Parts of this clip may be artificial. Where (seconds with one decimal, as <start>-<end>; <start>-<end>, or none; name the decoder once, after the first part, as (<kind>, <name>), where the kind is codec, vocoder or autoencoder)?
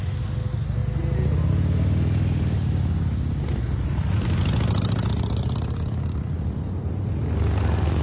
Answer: none